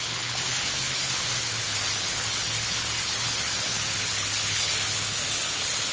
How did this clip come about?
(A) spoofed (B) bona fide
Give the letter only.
A